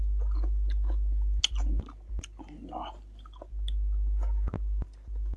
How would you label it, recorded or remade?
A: recorded